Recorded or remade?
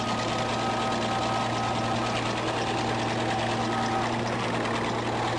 recorded